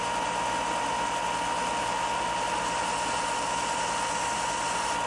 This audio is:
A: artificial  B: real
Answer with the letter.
B